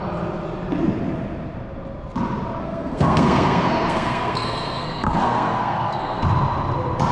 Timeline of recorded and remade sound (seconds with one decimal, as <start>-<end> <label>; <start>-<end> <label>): 0.0-2.6 recorded; 2.6-6.2 remade; 6.2-7.1 recorded